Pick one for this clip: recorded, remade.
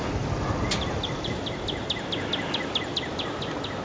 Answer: recorded